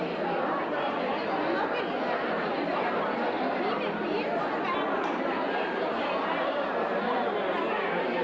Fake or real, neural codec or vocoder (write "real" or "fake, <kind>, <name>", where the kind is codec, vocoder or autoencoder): real